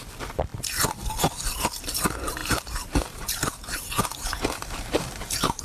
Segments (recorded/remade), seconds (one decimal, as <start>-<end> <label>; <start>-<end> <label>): 0.0-2.4 recorded; 2.4-5.6 remade